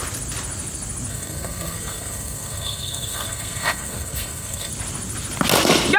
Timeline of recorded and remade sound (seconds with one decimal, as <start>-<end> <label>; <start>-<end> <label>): 0.0-1.1 recorded; 1.1-4.7 remade; 4.7-6.0 recorded